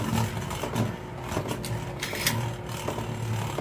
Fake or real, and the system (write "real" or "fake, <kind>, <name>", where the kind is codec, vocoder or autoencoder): real